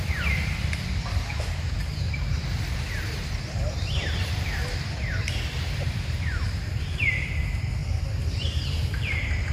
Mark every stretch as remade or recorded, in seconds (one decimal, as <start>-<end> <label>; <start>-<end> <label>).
0.0-9.5 remade